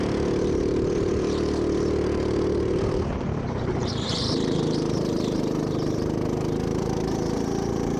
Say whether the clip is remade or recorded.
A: remade